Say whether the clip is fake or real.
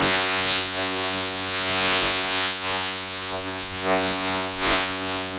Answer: fake